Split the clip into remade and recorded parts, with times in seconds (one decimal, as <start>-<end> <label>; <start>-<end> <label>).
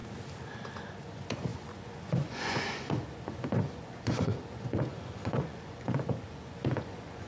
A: 0.0-0.9 recorded; 0.9-7.3 remade